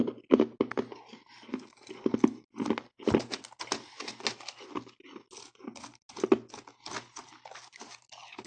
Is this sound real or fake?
real